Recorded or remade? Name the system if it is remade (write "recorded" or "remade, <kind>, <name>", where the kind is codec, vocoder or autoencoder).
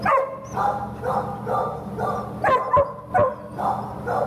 recorded